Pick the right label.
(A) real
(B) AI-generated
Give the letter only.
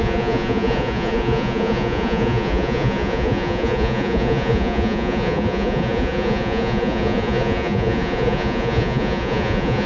B